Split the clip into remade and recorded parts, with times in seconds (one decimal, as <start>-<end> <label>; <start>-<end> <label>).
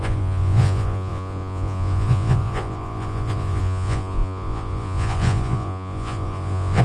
0.0-6.8 remade